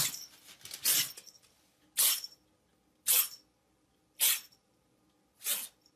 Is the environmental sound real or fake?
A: real